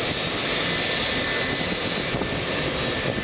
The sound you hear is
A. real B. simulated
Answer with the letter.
A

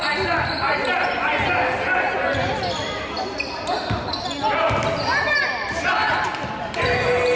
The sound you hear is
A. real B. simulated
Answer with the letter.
A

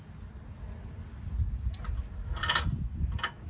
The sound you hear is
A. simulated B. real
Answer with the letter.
B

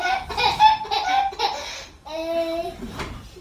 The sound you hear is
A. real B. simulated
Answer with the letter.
A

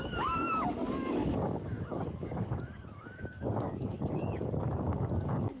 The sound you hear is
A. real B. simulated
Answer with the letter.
B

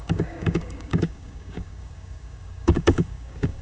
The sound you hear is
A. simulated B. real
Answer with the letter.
A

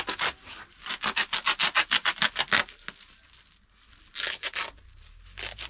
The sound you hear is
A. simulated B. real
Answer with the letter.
B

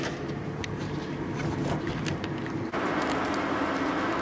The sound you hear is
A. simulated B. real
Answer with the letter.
B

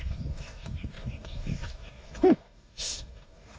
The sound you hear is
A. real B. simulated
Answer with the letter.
B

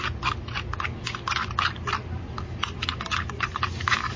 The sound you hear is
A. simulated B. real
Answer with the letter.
B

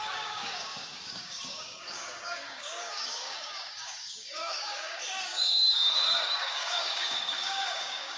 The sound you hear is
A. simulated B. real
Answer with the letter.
A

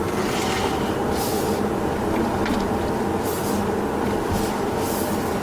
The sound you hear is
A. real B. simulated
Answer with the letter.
A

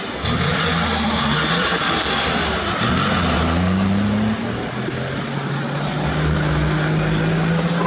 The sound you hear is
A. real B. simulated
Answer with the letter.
A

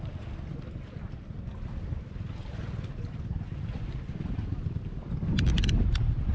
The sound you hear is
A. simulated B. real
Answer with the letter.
B